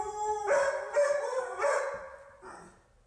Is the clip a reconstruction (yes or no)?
no